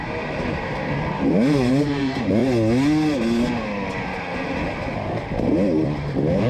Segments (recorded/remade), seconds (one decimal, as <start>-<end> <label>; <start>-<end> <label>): 0.0-2.4 remade; 2.4-6.5 recorded